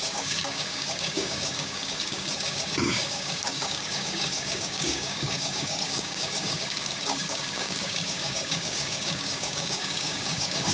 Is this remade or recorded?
remade